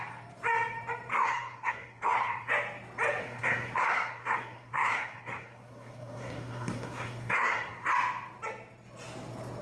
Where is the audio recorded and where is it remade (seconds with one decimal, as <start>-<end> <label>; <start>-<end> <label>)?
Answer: 0.0-1.1 recorded; 1.1-2.5 remade; 2.5-3.2 recorded; 3.2-7.9 remade; 7.9-9.6 recorded